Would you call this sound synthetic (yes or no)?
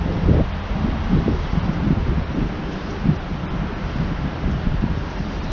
no